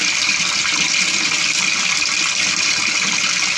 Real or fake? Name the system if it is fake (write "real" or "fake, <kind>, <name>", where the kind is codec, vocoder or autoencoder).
fake, vocoder, BigVGAN v2